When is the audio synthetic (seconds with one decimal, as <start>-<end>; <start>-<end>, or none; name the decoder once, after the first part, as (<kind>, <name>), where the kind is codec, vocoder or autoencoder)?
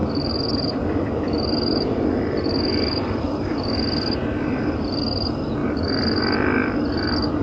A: 0.0-3.5 (vocoder, BigVGAN v2); 5.6-6.2